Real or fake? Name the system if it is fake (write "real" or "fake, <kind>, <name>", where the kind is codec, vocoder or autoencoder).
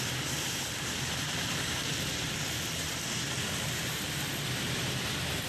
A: real